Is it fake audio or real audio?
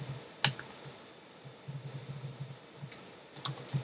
real